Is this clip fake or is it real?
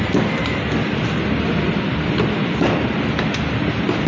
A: real